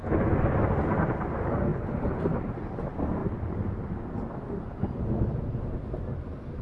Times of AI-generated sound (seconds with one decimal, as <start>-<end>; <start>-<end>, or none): none